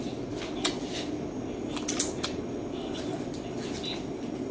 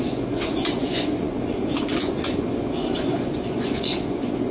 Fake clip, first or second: second